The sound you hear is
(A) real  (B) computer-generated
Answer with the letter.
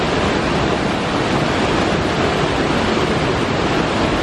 B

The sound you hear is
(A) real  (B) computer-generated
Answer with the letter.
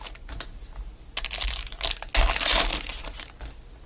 A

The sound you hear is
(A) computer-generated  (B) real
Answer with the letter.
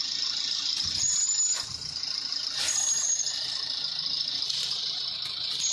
B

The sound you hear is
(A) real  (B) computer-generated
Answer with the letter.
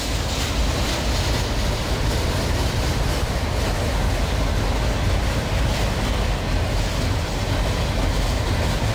A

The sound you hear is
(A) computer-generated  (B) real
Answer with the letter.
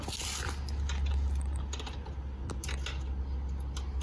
B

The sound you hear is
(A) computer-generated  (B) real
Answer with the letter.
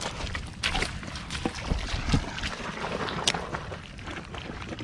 B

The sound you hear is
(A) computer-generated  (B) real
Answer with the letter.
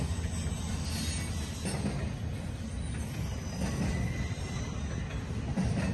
B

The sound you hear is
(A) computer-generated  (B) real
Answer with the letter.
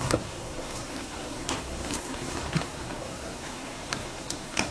A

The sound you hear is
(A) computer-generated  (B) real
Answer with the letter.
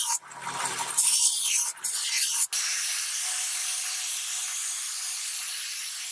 B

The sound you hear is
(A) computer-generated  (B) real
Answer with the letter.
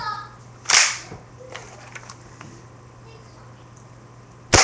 B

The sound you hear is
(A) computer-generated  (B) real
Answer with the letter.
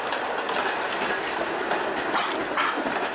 B